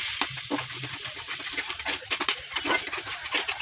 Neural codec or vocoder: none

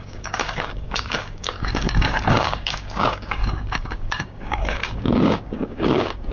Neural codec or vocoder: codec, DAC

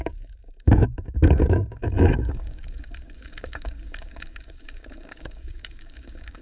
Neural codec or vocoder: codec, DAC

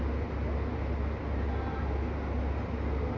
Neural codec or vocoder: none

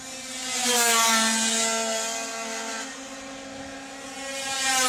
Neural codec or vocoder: none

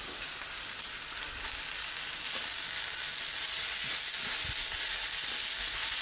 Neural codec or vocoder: none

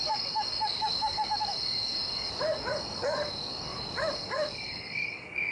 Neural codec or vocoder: codec, DAC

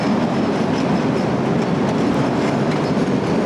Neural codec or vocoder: none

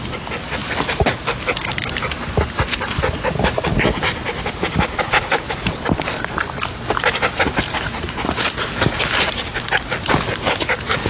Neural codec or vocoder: none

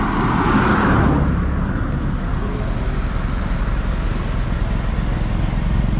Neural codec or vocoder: none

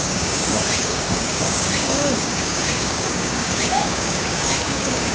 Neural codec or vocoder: codec, DAC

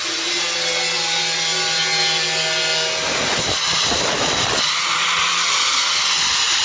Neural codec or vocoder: none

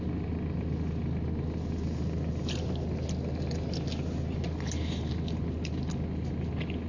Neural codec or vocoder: none